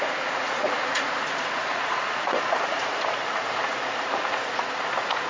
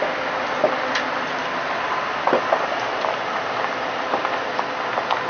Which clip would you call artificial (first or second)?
first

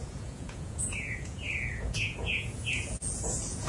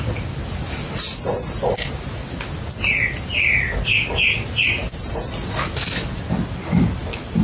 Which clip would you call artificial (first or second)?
first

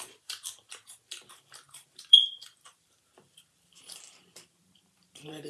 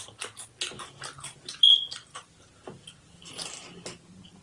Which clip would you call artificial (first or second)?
first